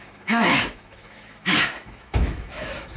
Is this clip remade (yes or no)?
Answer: yes